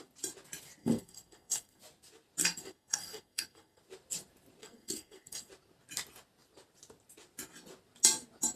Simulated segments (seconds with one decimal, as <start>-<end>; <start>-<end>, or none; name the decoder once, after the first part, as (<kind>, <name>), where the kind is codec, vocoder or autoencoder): 0.8-1.8 (codec, SNAC); 2.4-3.8; 4.6-5.5